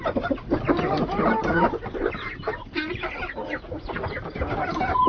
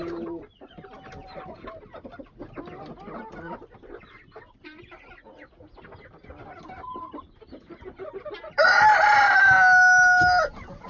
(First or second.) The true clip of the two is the second